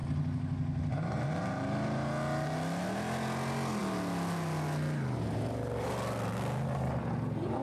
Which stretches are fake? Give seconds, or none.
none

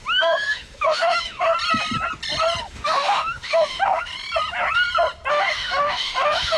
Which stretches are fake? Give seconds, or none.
0.0-1.5 (autoencoder, DAC-VAE); 2.6-4.1; 5.3-6.6

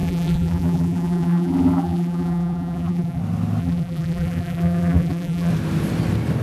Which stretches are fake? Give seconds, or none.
0.0-3.2 (vocoder, BigVGAN v2); 3.6-5.5

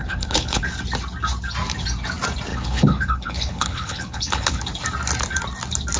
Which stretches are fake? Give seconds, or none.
0.0-0.6 (codec, HILCodec); 2.5-4.6

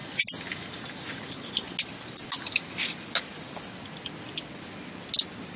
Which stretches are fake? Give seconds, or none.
none

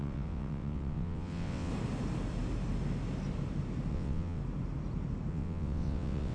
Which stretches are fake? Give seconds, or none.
0.0-1.7 (vocoder, WaveNeXt); 3.9-4.4; 5.3-6.3

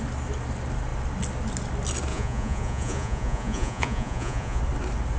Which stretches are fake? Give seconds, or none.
2.1-4.6 (vocoder, Vocos)